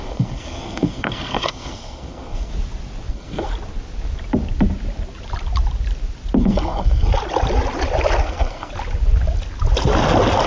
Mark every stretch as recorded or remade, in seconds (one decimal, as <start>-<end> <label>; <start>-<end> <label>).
0.0-2.5 remade; 2.5-3.1 recorded; 3.1-3.5 remade; 3.5-6.4 recorded; 6.4-7.1 remade; 7.1-8.2 recorded; 8.2-8.7 remade; 8.7-10.5 recorded